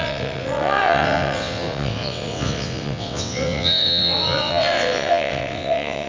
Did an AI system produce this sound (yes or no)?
yes